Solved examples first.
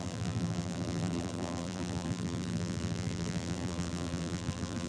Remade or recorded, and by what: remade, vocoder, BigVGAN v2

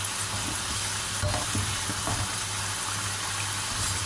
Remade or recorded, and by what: recorded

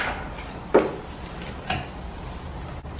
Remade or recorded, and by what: recorded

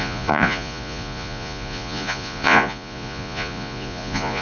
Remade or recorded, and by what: remade, vocoder, Vocos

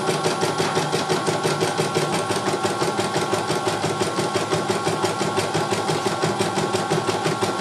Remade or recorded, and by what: recorded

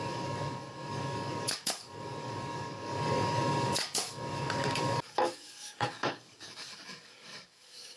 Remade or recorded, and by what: remade, codec, DAC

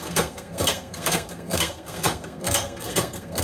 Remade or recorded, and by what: remade, codec, SNAC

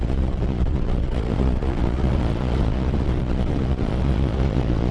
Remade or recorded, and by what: remade, vocoder, Vocos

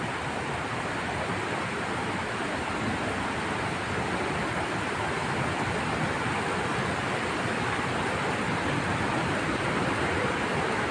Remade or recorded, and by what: remade, vocoder, BigVGAN v2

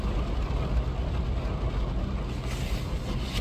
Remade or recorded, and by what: recorded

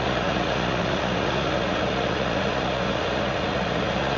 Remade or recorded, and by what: remade, vocoder, Vocos